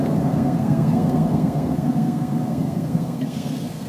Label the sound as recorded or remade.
remade